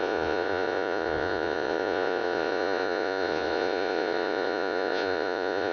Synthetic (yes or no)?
yes